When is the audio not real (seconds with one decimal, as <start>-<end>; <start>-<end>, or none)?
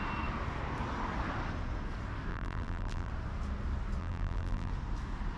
2.3-3.1; 4.0-4.7